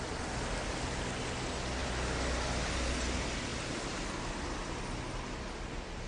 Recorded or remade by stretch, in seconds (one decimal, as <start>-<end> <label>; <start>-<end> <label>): 0.0-3.5 recorded; 3.5-4.8 remade; 4.8-6.1 recorded